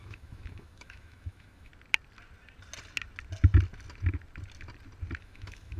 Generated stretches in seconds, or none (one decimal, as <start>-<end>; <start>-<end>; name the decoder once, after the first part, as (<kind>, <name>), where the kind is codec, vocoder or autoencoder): 0.0-1.7 (autoencoder, DAC-VAE); 5.2-5.8